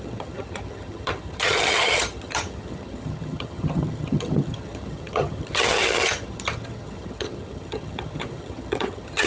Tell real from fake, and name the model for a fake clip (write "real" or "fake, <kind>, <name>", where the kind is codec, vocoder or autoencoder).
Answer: fake, vocoder, HiFi-GAN